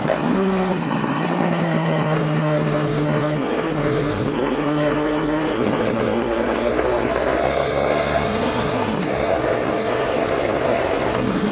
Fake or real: fake